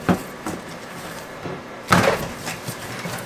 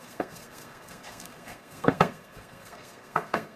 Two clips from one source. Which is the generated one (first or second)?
second